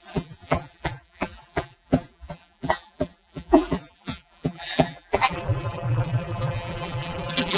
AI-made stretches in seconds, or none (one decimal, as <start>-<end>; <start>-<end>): 0.0-7.6